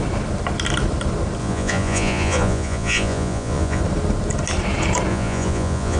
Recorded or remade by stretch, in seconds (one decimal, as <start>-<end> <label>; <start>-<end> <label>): 0.0-1.4 recorded; 1.4-3.8 remade; 3.8-5.1 recorded; 5.1-6.0 remade